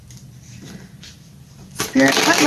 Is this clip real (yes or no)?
yes